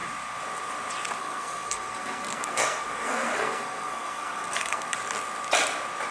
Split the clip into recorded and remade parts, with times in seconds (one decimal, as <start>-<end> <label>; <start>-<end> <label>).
0.0-1.2 recorded; 1.2-4.9 remade; 4.9-6.1 recorded